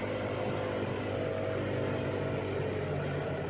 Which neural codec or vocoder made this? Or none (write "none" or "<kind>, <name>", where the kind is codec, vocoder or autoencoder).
none